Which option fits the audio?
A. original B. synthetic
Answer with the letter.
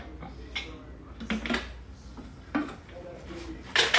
A